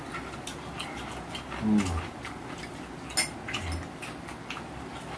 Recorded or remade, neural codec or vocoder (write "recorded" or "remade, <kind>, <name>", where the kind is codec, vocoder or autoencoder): recorded